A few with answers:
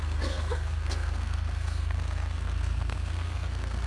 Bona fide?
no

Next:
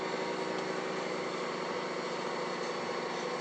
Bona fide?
yes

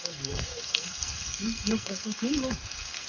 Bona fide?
no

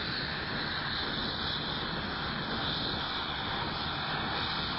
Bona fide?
yes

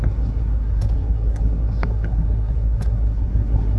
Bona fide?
no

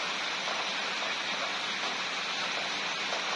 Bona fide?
yes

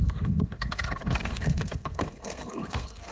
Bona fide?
no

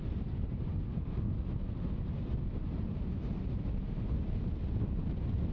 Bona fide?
yes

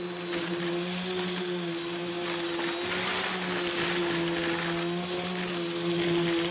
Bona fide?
yes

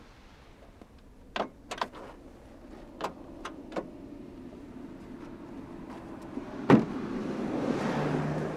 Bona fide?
yes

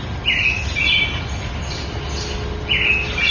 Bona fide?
yes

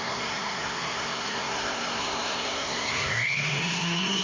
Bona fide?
no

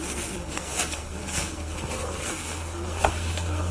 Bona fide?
no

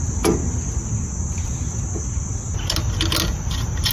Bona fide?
yes